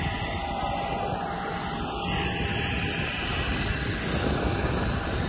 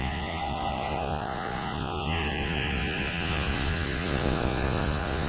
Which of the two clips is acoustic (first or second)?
first